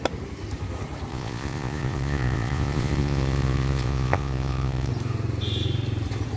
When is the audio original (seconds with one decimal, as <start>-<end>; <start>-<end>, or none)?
0.0-1.1; 4.9-6.4